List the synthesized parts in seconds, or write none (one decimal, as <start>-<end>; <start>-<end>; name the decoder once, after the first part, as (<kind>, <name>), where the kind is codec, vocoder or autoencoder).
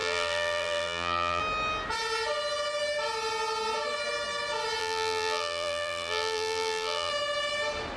0.0-1.4 (vocoder, BigVGAN v2); 4.8-7.1